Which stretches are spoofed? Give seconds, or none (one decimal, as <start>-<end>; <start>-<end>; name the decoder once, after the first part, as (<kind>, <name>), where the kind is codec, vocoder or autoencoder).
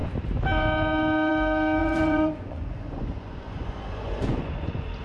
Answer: 1.8-5.0 (vocoder, Vocos)